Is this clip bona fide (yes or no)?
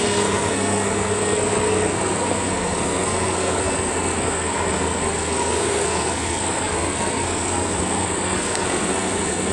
no